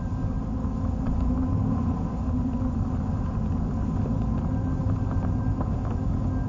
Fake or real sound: real